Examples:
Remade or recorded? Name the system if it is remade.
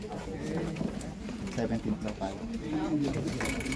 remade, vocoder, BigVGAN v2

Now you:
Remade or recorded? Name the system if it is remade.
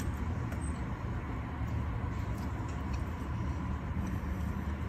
recorded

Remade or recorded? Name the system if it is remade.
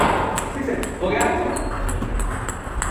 recorded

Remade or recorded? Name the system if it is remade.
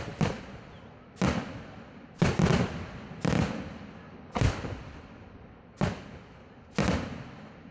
recorded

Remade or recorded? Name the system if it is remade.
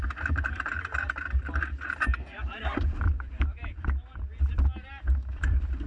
remade, vocoder, BigVGAN v2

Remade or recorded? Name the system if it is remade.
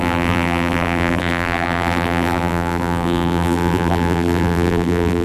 remade, vocoder, BigVGAN v2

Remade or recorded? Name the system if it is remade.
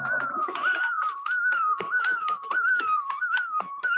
remade, vocoder, BigVGAN v2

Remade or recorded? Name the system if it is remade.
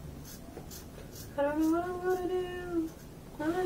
recorded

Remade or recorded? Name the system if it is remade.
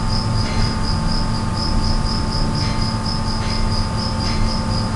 recorded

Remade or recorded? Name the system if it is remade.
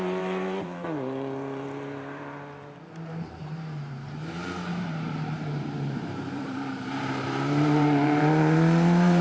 remade, vocoder, BigVGAN v2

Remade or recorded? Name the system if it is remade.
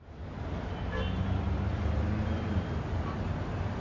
remade, vocoder, BigVGAN v2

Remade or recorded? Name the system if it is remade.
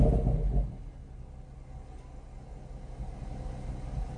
recorded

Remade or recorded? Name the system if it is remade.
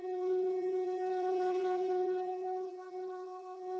remade, vocoder, BigVGAN v2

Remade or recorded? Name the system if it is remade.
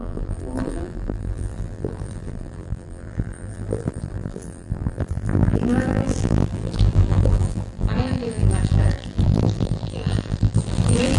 remade, vocoder, BigVGAN v2